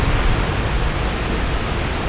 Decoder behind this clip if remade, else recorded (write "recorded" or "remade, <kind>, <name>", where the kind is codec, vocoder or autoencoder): remade, vocoder, BigVGAN v2